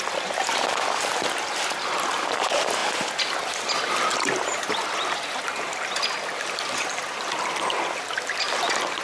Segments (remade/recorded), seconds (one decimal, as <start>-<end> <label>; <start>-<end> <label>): 0.0-9.0 recorded